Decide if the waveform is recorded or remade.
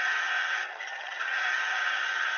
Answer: remade